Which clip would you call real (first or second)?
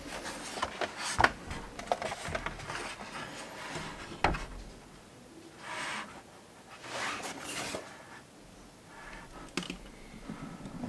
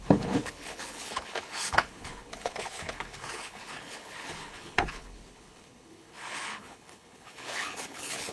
first